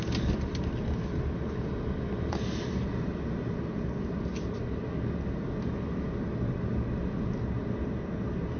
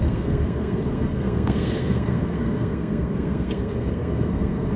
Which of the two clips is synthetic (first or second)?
second